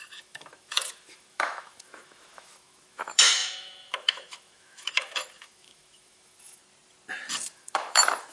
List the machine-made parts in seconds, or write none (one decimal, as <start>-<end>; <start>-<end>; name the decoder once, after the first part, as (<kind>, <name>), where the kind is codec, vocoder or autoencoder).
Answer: 0.0-6.6 (autoencoder, DAC-VAE); 7.5-8.3